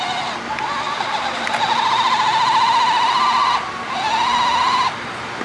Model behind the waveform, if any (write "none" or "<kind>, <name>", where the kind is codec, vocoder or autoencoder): none